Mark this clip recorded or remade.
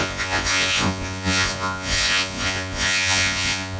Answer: remade